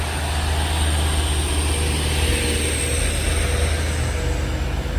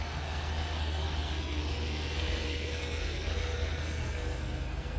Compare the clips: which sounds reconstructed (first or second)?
second